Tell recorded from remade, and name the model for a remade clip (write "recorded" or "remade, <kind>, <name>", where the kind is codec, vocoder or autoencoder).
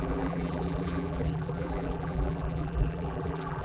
remade, vocoder, BigVGAN v2